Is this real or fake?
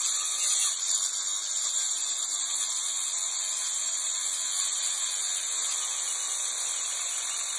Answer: real